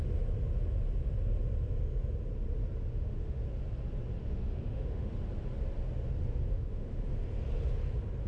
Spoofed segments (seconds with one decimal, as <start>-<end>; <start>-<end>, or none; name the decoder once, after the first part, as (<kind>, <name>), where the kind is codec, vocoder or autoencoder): 2.9-3.4 (autoencoder, DAC-VAE); 4.2-5.1; 6.5-7.1